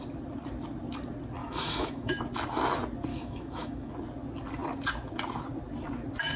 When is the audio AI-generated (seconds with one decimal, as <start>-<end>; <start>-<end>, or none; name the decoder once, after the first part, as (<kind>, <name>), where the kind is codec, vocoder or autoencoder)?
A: 1.4-2.2 (autoencoder, DAC-VAE); 3.1-3.9